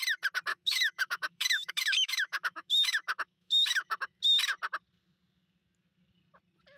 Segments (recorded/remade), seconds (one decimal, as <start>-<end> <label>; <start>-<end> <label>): 0.0-0.5 recorded; 0.5-4.2 remade; 4.2-6.8 recorded